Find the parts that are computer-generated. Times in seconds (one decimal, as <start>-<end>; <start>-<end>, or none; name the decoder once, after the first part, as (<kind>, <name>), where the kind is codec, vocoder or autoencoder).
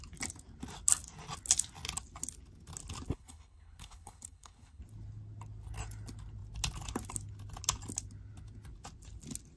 3.1-4.8 (codec, HILCodec)